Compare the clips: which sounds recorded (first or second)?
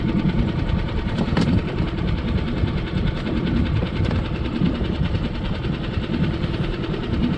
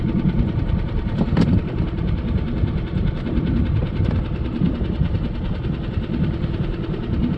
second